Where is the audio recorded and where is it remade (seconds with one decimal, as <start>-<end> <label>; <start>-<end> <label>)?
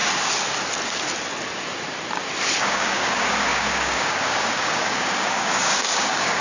0.0-2.6 recorded; 2.6-6.4 remade